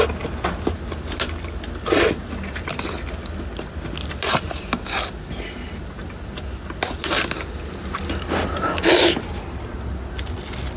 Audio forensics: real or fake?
real